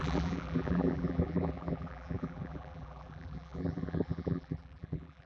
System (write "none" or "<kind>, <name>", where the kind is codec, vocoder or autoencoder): vocoder, BigVGAN v2